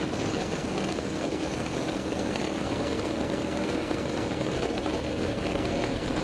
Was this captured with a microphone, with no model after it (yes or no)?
no